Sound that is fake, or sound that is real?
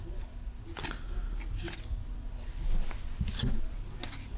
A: real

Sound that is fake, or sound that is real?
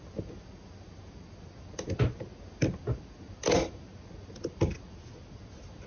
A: real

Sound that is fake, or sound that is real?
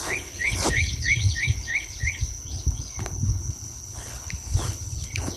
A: fake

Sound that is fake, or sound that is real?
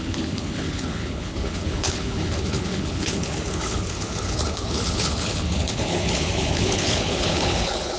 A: fake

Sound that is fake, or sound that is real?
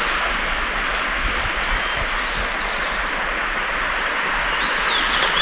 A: real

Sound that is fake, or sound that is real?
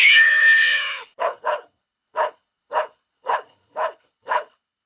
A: fake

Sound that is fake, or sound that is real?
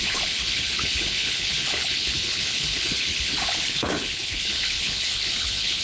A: fake